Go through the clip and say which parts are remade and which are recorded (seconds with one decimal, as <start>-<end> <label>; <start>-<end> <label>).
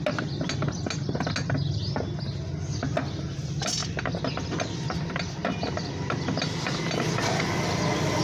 0.0-8.2 recorded